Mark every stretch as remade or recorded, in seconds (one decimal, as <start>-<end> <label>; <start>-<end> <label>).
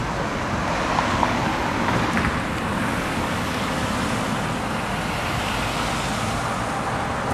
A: 0.0-1.1 recorded; 1.1-1.5 remade; 1.5-3.0 recorded; 3.0-3.8 remade; 3.8-7.3 recorded